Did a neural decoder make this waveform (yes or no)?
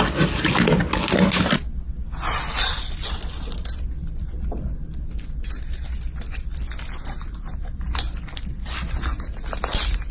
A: no